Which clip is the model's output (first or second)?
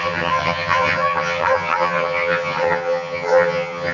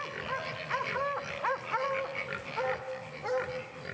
first